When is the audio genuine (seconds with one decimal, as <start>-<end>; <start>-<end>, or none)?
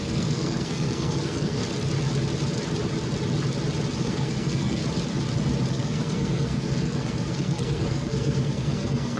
1.6-4.0; 4.8-5.7